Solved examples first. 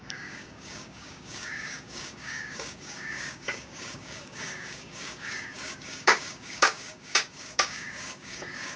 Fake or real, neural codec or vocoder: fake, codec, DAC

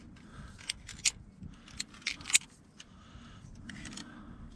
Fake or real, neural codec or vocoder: real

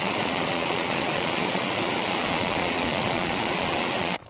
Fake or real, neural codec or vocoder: fake, vocoder, Vocos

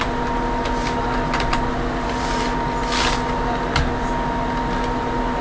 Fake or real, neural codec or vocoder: real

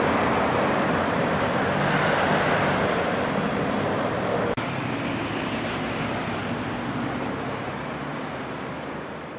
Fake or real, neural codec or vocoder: real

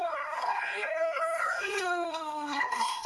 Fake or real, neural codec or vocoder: fake, codec, SNAC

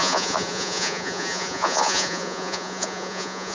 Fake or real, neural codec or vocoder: fake, vocoder, Vocos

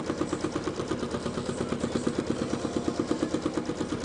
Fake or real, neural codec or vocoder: real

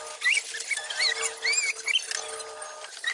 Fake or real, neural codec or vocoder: real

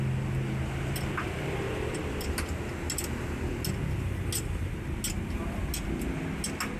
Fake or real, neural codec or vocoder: real